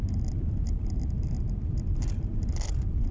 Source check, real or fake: real